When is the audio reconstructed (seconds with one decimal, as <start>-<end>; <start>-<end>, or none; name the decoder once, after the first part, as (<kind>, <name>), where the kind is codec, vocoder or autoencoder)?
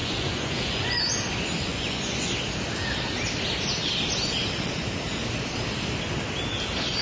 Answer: 0.0-1.0 (vocoder, Vocos); 1.7-2.3